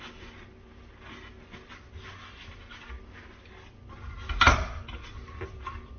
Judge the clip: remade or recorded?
recorded